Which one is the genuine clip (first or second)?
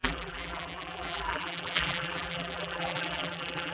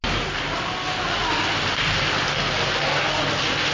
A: second